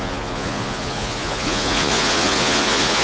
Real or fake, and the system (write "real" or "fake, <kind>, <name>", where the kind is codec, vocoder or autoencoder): fake, vocoder, Vocos